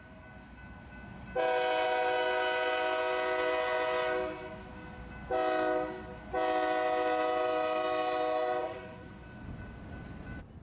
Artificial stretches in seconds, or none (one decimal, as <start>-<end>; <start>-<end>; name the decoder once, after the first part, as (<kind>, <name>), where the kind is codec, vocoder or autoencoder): 8.6-9.1 (vocoder, Vocos)